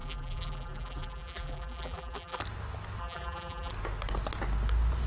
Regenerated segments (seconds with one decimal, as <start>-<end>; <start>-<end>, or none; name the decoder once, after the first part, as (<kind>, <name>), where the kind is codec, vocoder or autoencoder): 0.0-2.4 (vocoder, BigVGAN v2); 3.0-3.7

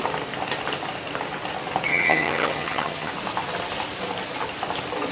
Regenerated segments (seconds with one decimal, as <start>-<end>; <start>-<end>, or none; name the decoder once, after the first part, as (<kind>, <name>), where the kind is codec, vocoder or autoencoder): 1.9-3.1 (vocoder, HiFi-GAN)

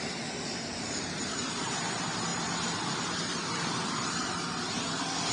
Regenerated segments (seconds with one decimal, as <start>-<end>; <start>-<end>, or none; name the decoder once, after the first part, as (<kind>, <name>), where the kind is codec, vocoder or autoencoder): 0.0-5.3 (vocoder, BigVGAN v2)

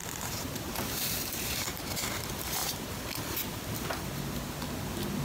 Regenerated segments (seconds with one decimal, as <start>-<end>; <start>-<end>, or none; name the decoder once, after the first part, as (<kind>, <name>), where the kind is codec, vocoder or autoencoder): 0.0-1.6 (vocoder, BigVGAN v2)

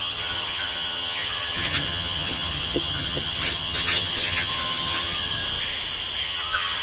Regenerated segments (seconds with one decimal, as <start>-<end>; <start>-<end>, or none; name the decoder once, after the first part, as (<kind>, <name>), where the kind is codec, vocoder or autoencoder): 0.0-5.4 (vocoder, HiFi-GAN); 6.2-6.8